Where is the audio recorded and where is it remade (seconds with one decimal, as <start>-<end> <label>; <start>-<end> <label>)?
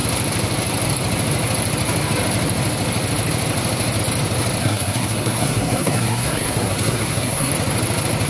0.0-4.6 recorded; 4.6-7.5 remade; 7.5-8.3 recorded